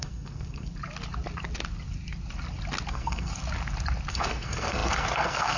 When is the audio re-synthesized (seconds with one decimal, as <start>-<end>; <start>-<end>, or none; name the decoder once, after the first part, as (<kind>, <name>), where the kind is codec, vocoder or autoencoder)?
0.0-0.7 (codec, SNAC); 2.9-3.3; 4.1-5.6